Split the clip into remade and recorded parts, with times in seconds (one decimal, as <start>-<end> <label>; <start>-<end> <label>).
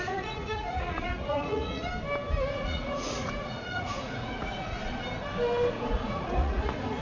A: 0.0-1.9 remade; 1.9-2.5 recorded; 2.5-4.8 remade; 4.8-5.7 recorded; 5.7-7.0 remade